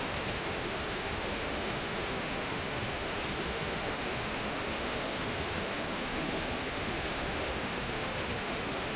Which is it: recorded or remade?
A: remade